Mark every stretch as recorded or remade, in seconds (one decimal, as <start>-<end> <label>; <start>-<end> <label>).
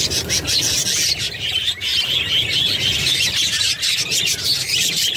0.0-5.2 recorded